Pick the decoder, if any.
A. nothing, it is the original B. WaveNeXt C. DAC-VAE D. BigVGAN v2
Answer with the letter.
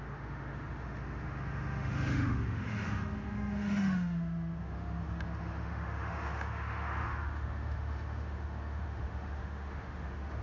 C